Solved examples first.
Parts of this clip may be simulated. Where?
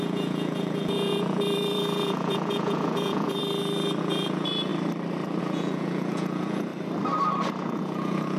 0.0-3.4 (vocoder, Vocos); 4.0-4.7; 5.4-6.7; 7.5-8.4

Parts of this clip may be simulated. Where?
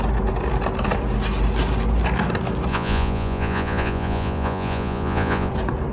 2.7-5.5 (vocoder, Vocos)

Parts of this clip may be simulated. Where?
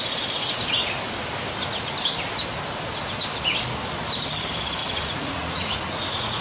4.8-6.4 (vocoder, Vocos)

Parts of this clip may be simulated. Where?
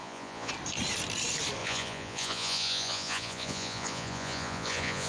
0.0-0.5 (vocoder, Vocos); 1.6-5.1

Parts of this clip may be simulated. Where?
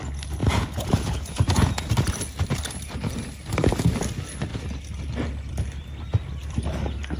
0.4-1.9 (vocoder, Vocos)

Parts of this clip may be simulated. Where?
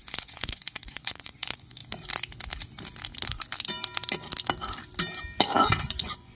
0.0-1.8 (vocoder, Vocos); 5.6-6.4